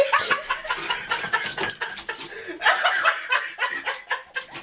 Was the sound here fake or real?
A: real